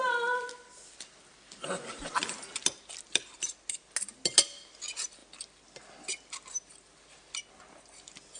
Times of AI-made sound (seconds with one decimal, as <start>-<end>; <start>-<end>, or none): none